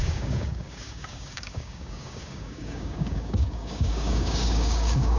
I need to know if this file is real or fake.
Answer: fake